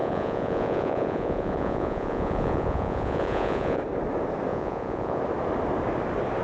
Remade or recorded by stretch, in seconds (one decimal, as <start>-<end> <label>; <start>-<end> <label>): 0.0-3.8 remade; 3.8-4.5 recorded; 4.5-5.2 remade; 5.2-6.4 recorded